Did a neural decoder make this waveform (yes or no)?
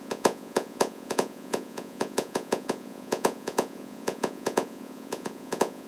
yes